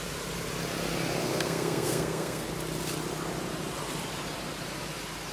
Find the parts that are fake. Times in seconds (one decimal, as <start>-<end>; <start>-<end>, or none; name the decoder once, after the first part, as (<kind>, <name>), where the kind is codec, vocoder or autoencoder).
1.2-2.5 (codec, SNAC)